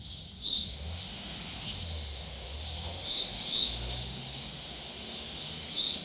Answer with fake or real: fake